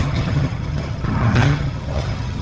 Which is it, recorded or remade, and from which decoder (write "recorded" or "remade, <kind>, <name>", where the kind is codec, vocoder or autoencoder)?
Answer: remade, vocoder, HiFi-GAN